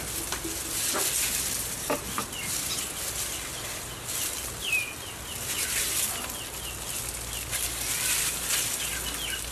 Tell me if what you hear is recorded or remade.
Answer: recorded